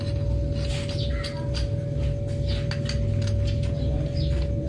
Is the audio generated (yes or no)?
no